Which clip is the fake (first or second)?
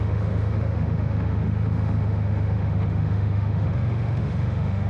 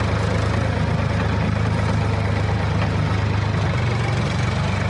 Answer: first